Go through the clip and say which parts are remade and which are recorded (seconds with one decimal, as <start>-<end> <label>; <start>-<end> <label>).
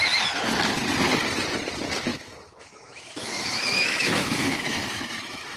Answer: 0.0-2.1 recorded; 2.1-5.6 remade